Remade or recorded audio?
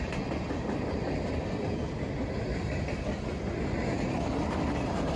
remade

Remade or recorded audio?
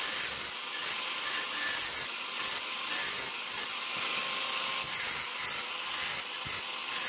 recorded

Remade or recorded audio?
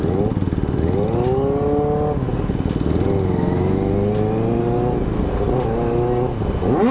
recorded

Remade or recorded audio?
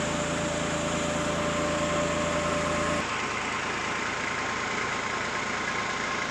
recorded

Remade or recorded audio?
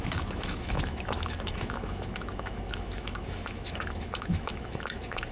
remade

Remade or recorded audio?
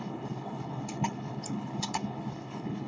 remade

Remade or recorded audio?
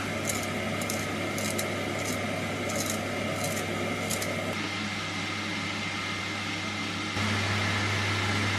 recorded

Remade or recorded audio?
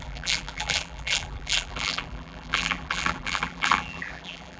remade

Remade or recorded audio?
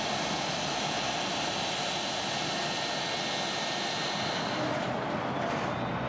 recorded